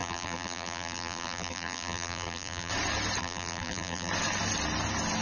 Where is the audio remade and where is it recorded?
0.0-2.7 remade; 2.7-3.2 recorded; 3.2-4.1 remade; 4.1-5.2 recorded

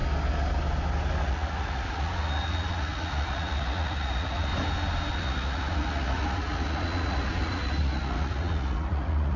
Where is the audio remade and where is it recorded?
0.0-1.2 recorded; 1.2-4.5 remade; 4.5-5.1 recorded; 5.1-9.4 remade

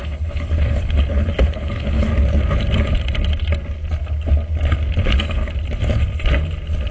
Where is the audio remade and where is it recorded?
0.0-2.1 remade; 2.1-5.0 recorded; 5.0-5.4 remade; 5.4-6.9 recorded

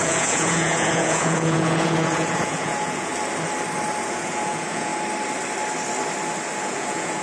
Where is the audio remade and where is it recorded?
0.0-3.1 remade; 3.1-4.0 recorded; 4.0-4.9 remade; 4.9-6.6 recorded; 6.6-7.2 remade

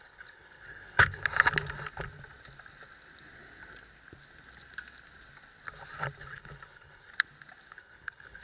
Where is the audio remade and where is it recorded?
0.0-1.2 remade; 1.2-6.2 recorded; 6.2-7.1 remade; 7.1-7.7 recorded; 7.7-8.4 remade

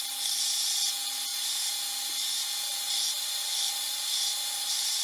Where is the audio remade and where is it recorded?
0.0-5.0 recorded